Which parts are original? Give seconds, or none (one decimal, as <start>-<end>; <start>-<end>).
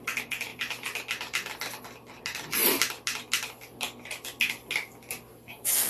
0.0-5.9